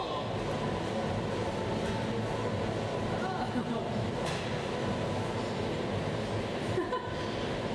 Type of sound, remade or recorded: recorded